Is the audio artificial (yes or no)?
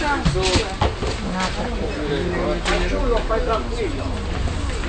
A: no